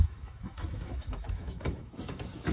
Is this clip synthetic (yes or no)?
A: yes